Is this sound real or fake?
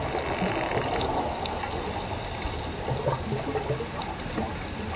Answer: real